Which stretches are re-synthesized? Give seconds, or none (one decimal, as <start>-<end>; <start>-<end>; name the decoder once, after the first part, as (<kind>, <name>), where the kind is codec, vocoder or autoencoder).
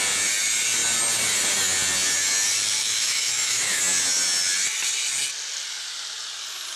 2.8-3.8 (autoencoder, DAC-VAE)